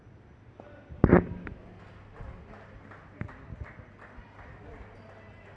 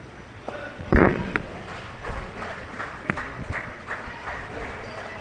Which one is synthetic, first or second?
second